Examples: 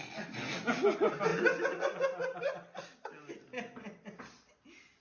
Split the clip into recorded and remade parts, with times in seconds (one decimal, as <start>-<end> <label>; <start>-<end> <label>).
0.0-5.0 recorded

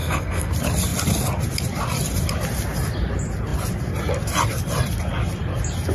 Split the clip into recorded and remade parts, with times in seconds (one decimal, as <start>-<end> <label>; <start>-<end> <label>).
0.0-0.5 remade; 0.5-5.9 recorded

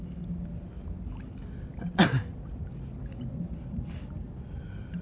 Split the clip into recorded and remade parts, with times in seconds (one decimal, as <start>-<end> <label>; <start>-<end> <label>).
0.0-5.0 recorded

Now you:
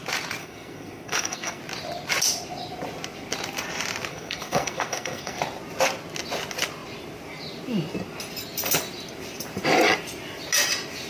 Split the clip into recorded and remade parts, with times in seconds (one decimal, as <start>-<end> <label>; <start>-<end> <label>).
0.0-0.4 recorded; 0.4-1.6 remade; 1.6-4.1 recorded; 4.1-5.4 remade; 5.4-11.1 recorded